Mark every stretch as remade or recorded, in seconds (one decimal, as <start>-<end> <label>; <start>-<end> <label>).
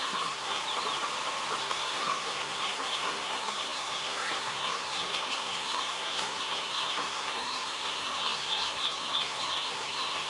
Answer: 0.0-0.6 remade; 0.6-1.6 recorded; 1.6-10.3 remade